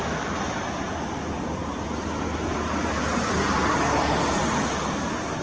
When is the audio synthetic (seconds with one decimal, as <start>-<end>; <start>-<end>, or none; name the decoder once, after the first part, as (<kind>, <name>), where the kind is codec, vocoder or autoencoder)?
1.6-4.2 (vocoder, BigVGAN v2)